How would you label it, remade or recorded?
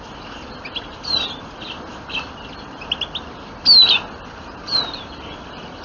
recorded